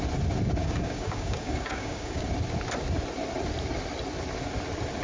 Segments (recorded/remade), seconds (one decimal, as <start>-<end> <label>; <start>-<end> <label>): 0.0-0.6 recorded; 0.6-2.3 remade; 2.3-5.0 recorded